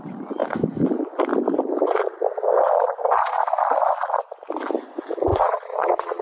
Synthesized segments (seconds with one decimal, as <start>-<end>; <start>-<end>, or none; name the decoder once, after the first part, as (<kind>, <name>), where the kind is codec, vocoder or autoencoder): 5.3-6.2 (vocoder, Vocos)